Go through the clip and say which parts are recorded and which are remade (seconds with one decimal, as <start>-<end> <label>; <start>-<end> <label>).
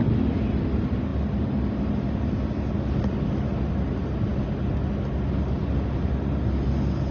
0.0-7.1 recorded